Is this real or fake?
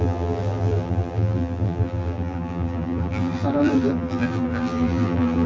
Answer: fake